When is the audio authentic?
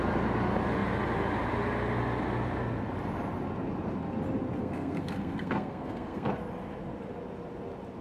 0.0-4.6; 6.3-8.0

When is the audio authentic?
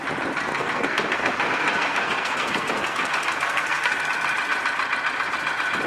0.0-0.5; 4.0-5.9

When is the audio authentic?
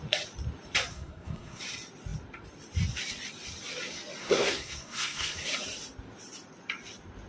0.0-0.9; 1.6-4.2; 5.5-7.3